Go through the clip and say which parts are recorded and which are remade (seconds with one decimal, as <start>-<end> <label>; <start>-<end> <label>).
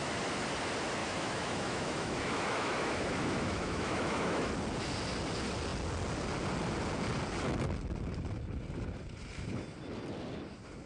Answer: 0.0-1.0 recorded; 1.0-4.5 remade; 4.5-10.9 recorded